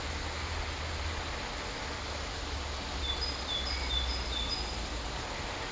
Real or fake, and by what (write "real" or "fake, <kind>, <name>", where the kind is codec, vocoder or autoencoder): real